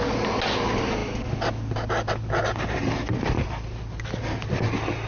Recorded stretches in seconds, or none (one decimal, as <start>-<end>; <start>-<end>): 0.0-5.1